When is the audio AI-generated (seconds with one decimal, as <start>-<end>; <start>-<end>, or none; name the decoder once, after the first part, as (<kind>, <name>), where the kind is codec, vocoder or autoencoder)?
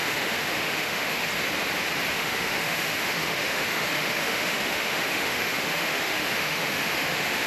0.0-1.3 (autoencoder, DAC-VAE); 2.1-7.5